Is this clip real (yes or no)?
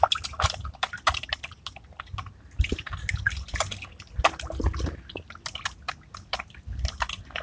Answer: yes